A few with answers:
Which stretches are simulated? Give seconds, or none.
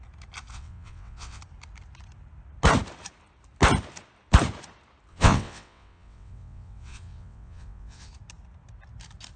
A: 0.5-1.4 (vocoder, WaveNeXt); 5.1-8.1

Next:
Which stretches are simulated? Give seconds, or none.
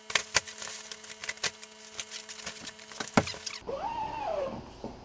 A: none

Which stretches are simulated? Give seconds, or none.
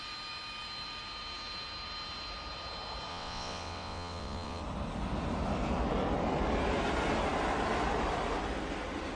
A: 3.1-4.6 (vocoder, WaveNeXt)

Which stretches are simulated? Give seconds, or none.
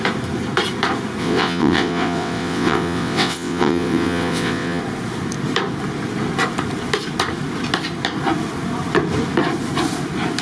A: 1.2-4.8 (vocoder, WaveNeXt)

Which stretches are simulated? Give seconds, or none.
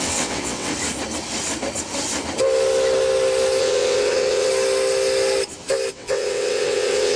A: 0.0-0.7 (vocoder, WaveNeXt); 3.6-4.5; 5.9-7.2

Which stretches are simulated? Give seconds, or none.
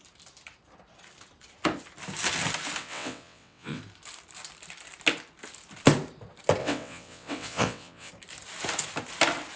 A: 2.8-3.8 (vocoder, WaveNeXt); 6.6-8.1